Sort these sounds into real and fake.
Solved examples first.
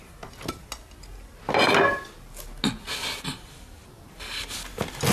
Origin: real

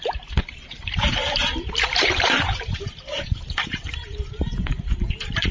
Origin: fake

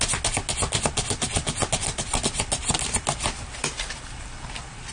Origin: real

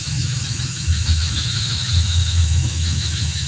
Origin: fake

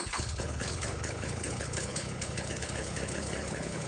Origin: fake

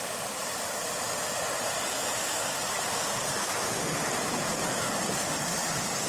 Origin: real